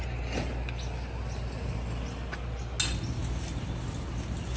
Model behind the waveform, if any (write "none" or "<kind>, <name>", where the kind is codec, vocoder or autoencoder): none